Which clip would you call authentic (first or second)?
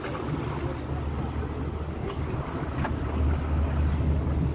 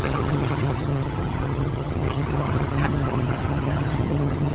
first